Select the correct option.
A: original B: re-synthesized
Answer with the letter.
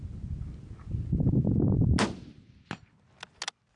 A